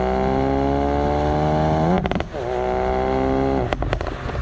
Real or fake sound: real